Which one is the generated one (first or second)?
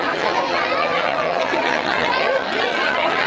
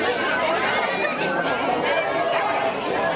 first